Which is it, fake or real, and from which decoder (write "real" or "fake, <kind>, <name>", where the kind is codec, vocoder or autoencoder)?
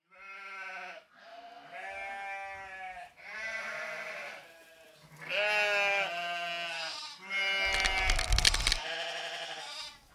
real